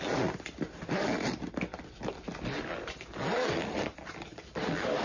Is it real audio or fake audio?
fake